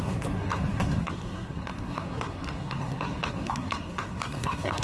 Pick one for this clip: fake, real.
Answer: fake